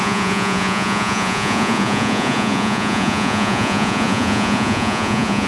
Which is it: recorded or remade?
remade